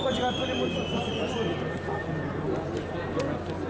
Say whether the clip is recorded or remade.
recorded